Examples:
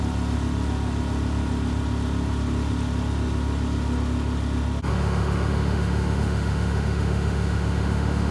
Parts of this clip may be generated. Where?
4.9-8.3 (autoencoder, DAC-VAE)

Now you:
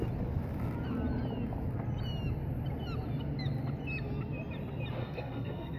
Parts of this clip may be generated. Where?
5.0-5.8 (codec, SNAC)

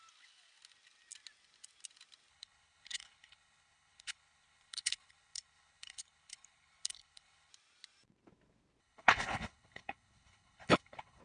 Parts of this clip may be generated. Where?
2.3-7.5 (codec, HILCodec); 8.8-11.2